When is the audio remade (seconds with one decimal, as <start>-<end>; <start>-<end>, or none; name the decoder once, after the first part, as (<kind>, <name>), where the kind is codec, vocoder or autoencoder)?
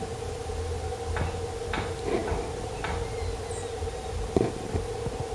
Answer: none